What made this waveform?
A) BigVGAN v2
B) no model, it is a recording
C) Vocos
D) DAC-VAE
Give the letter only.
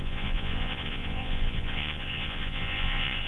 C